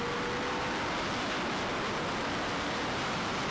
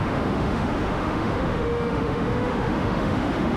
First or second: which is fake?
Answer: second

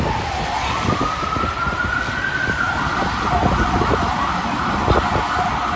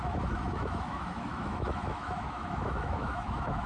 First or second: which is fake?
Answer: second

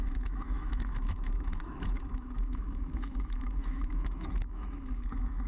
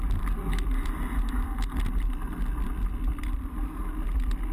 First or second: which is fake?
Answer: first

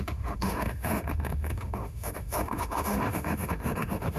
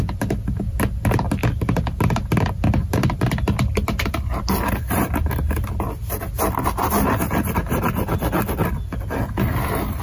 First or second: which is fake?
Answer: first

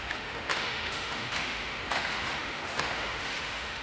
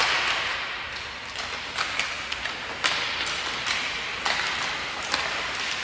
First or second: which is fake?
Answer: first